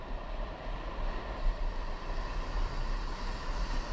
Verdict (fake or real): real